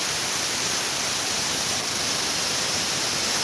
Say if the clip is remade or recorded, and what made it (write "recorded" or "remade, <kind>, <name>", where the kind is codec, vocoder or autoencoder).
recorded